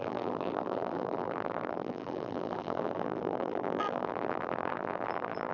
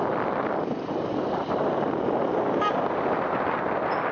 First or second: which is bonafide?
second